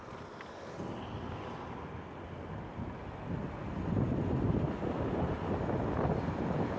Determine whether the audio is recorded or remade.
recorded